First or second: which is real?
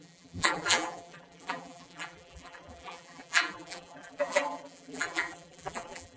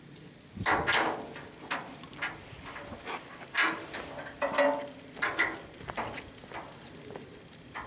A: second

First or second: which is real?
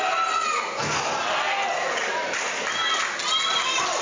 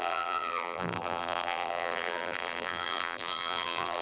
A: first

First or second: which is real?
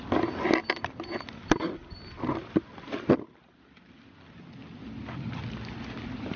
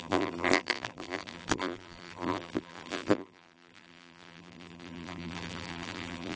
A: first